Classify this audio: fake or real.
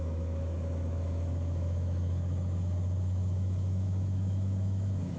fake